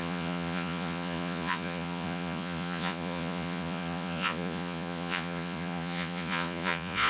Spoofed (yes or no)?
yes